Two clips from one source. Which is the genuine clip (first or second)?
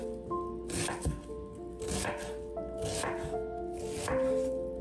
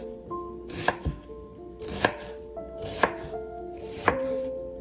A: first